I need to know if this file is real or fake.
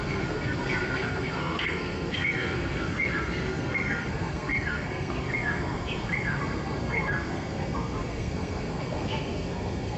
fake